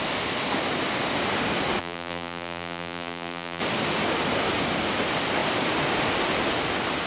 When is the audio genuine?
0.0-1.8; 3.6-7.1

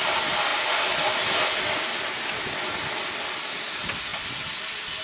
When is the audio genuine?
0.5-3.5

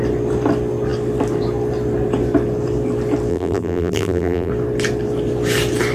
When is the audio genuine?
0.0-3.3; 4.5-5.9

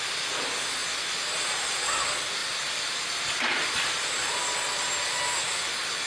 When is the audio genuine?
0.0-2.4; 4.3-6.1

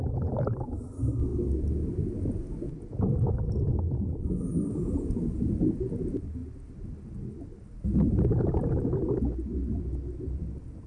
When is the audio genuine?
0.0-10.9

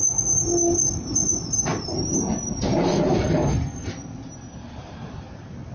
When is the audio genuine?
0.0-1.7; 2.2-2.7; 3.3-5.7

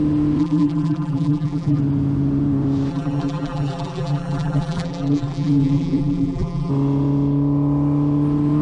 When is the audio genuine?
0.0-0.4; 1.8-2.9; 6.7-8.6

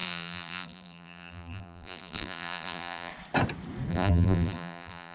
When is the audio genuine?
3.1-3.9